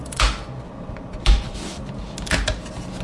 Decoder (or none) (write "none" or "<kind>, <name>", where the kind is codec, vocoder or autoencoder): none